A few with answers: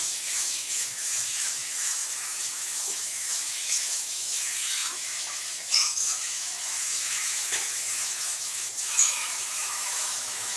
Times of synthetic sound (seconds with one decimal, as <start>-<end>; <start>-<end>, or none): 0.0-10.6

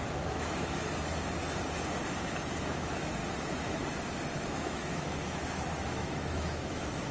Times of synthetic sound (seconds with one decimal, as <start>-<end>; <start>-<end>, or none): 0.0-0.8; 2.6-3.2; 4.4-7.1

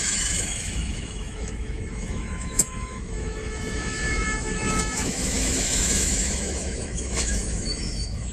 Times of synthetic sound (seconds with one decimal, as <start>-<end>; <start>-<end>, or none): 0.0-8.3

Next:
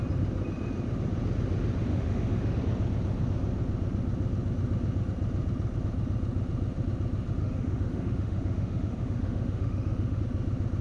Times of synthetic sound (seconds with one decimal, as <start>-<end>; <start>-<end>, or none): 1.9-2.6; 7.4-10.2

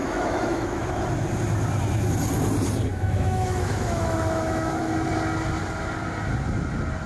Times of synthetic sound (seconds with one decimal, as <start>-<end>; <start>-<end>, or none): 0.0-1.0; 2.9-4.8